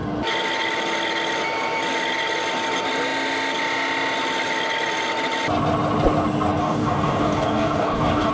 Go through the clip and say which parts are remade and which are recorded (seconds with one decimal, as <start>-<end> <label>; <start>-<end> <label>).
0.0-6.6 recorded; 6.6-8.3 remade